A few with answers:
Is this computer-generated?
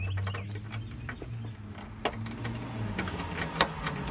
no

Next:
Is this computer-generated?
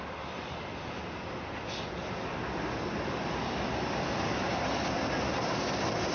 no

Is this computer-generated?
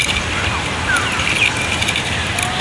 yes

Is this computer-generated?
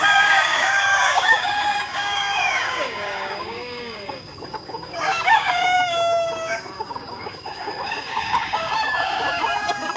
yes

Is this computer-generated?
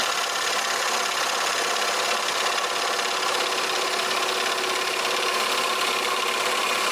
no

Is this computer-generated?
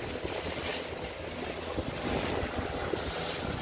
no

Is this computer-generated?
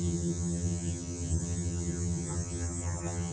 yes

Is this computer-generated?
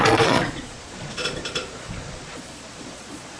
yes